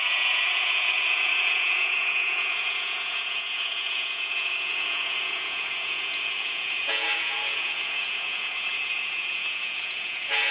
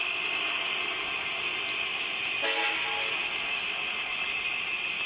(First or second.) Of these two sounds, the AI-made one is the first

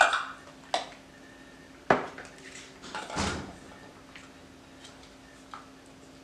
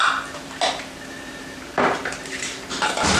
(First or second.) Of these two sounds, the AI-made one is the second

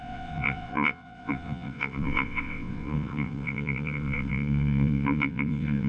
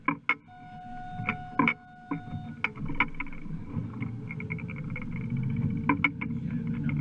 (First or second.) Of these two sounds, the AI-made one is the first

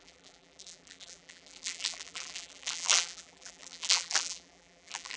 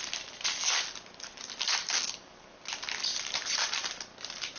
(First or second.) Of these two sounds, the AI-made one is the first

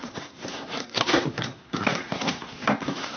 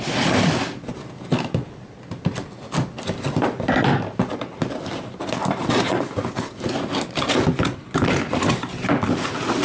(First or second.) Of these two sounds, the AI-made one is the first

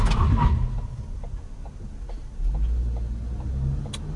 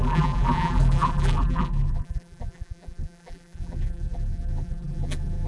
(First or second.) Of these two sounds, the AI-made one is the second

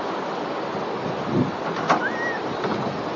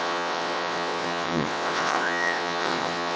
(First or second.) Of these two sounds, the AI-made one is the second